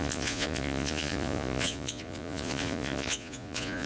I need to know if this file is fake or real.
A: fake